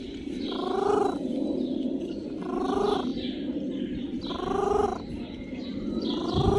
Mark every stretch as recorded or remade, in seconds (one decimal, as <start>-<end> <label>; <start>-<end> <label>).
0.0-3.1 recorded; 3.1-4.3 remade; 4.3-4.9 recorded; 4.9-5.9 remade; 5.9-6.6 recorded